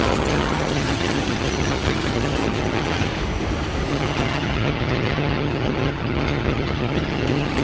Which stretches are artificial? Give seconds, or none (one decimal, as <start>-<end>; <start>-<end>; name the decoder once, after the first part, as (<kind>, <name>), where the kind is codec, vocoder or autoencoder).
0.0-3.1 (vocoder, HiFi-GAN); 3.9-7.6